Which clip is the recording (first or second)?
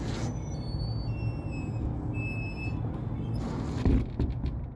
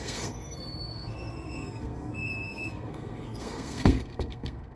first